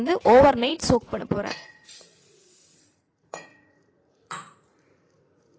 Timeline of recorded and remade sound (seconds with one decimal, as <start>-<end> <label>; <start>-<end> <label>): 0.0-5.6 remade